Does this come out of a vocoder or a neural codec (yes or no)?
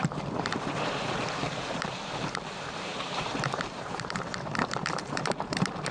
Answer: yes